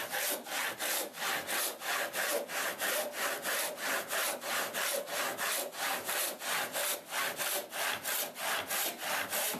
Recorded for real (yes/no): yes